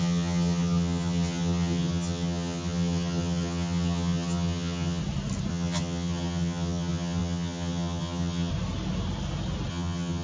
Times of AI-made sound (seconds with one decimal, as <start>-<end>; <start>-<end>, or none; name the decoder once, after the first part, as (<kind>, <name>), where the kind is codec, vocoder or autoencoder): 0.0-5.0 (vocoder, HiFi-GAN); 5.5-8.5; 9.7-10.2